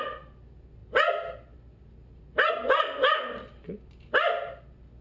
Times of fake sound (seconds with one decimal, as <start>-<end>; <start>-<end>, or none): none